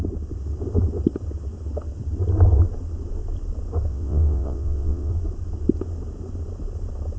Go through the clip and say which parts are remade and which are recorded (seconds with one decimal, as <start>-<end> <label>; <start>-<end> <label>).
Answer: 0.0-3.9 recorded; 3.9-5.1 remade; 5.1-7.2 recorded